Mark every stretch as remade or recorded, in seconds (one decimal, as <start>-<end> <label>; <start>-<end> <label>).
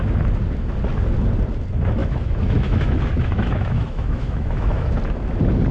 0.0-2.0 recorded; 2.0-4.9 remade; 4.9-5.7 recorded